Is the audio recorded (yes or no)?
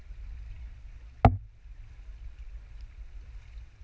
yes